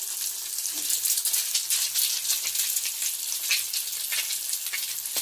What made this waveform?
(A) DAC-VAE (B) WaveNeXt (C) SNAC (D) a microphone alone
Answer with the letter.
D